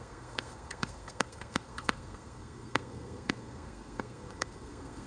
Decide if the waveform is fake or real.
fake